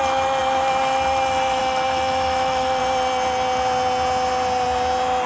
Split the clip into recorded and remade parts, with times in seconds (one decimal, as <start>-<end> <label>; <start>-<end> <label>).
0.0-2.8 remade; 2.8-5.3 recorded

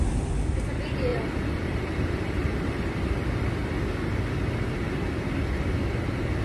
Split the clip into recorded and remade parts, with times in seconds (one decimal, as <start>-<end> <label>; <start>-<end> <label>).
0.0-1.1 recorded; 1.1-3.5 remade; 3.5-6.4 recorded

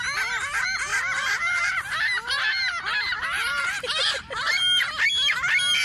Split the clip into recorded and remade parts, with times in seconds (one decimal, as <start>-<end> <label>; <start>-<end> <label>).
0.0-0.9 recorded; 0.9-1.6 remade; 1.6-2.6 recorded; 2.6-4.8 remade; 4.8-5.8 recorded

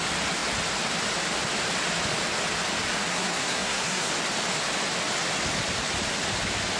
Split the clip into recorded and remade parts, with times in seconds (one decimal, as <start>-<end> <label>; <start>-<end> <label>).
0.0-3.1 recorded; 3.1-4.1 remade; 4.1-6.8 recorded

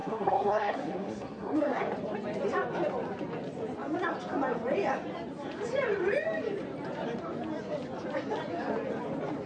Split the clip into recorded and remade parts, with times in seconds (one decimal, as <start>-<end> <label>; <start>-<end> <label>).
0.0-1.8 remade; 1.8-9.5 recorded